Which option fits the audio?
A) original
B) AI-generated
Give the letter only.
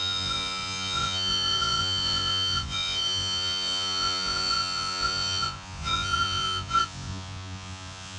B